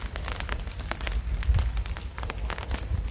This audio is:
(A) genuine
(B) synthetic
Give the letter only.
B